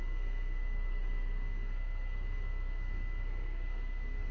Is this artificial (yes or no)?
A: yes